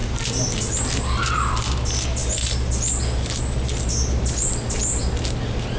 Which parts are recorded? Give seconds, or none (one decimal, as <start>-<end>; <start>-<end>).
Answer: 0.0-5.8